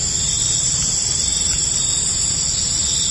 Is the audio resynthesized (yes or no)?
no